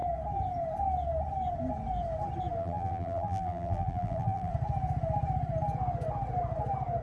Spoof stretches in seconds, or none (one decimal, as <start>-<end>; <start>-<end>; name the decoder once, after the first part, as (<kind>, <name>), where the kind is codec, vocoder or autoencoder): 2.6-4.5 (vocoder, BigVGAN v2)